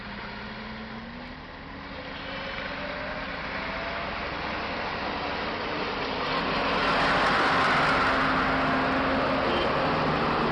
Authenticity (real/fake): real